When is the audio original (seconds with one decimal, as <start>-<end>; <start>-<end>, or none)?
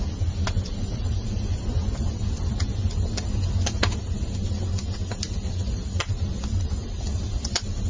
0.0-7.9